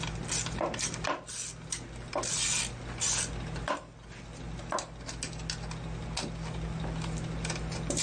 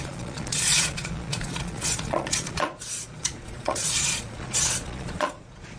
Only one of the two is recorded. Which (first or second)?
first